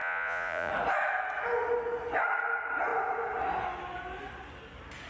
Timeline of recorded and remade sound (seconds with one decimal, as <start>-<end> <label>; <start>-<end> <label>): 0.0-0.7 remade; 0.7-5.1 recorded